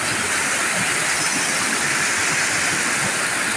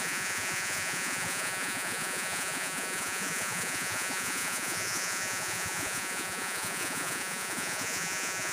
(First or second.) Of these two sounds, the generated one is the second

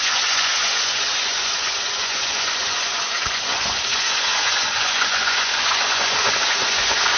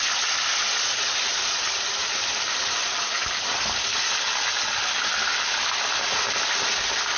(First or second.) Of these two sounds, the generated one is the first